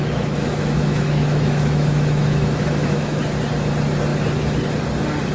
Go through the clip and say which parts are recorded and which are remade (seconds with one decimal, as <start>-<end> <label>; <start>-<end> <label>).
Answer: 0.0-3.2 remade; 3.2-5.3 recorded